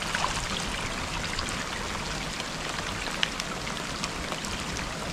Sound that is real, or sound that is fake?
real